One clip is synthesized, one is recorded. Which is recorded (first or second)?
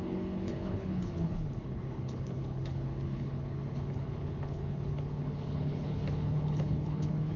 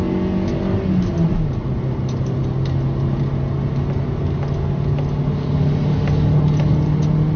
second